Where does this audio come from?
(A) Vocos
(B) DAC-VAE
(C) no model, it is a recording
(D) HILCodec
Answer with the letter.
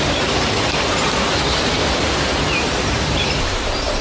C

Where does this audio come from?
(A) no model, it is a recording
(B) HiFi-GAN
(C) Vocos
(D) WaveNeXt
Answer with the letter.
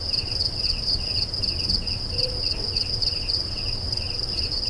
D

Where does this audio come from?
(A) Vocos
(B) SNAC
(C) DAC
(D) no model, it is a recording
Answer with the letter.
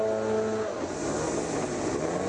D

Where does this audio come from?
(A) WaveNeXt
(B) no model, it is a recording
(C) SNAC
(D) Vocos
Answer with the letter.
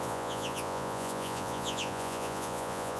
D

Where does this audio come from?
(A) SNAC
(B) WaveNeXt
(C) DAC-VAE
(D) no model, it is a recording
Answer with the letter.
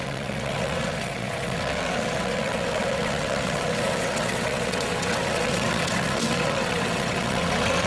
B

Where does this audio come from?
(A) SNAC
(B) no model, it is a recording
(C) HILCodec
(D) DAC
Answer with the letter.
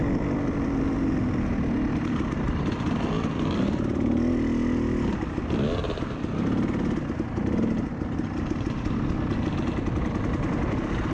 B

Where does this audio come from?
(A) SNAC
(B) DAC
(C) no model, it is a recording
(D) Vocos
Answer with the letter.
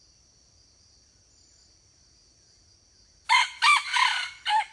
C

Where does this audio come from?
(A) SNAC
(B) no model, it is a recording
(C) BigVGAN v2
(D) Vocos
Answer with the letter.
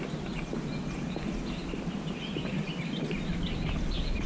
B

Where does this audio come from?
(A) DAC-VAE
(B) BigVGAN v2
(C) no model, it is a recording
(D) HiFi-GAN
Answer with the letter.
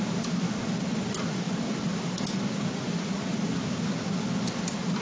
C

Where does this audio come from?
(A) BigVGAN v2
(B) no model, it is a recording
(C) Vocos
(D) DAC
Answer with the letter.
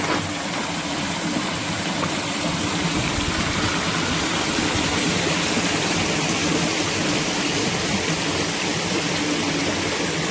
A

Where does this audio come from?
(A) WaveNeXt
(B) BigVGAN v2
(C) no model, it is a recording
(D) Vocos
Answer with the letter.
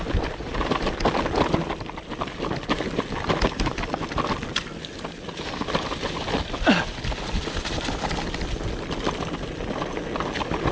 C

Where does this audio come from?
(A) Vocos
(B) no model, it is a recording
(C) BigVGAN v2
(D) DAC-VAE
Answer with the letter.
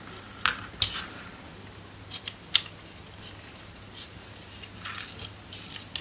B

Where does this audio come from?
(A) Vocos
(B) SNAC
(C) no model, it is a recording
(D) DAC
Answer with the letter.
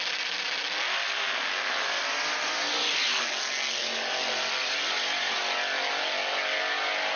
C